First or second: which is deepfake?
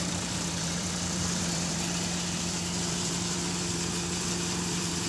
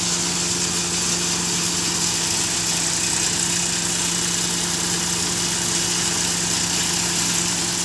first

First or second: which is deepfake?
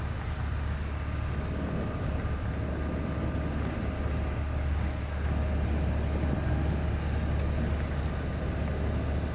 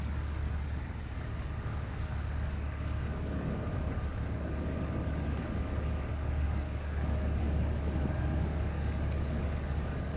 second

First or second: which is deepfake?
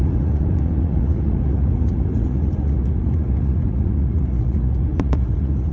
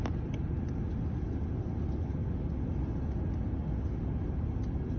first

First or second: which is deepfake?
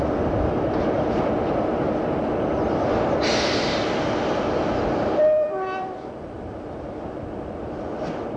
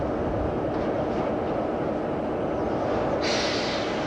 first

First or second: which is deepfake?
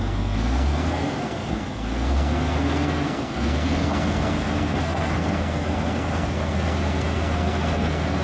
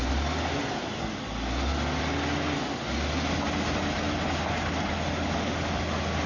first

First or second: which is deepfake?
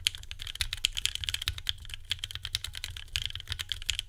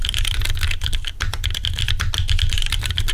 second